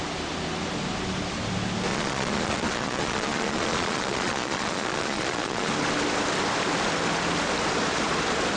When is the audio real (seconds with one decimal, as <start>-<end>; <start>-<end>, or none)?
0.0-1.9; 5.7-8.6